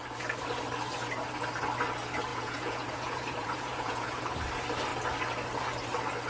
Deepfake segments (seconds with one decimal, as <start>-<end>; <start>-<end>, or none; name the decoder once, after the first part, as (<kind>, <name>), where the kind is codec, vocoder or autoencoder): 2.3-4.2 (vocoder, Vocos)